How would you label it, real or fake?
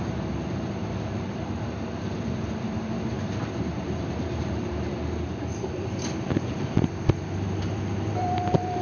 fake